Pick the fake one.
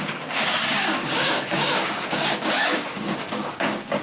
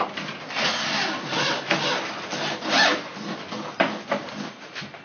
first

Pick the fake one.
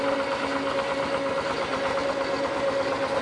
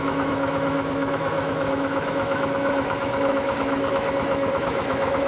second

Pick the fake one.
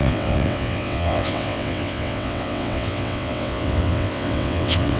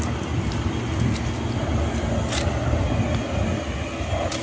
first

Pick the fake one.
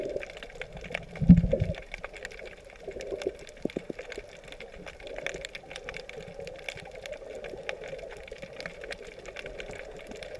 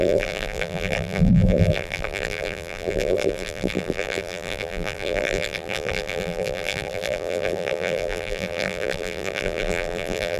second